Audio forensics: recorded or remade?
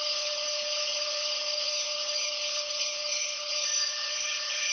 remade